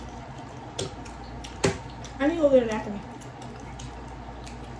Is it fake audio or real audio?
real